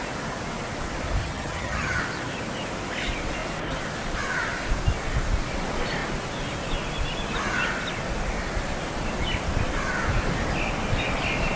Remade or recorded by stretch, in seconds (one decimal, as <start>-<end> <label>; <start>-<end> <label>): 0.0-1.2 recorded; 1.2-2.0 remade; 2.0-11.6 recorded